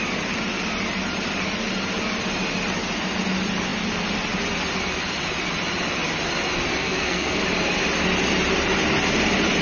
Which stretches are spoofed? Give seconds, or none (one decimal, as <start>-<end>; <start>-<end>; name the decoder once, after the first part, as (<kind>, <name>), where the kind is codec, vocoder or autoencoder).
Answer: 6.8-7.4 (codec, SNAC)